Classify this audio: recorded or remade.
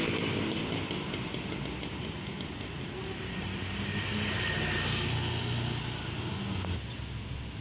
recorded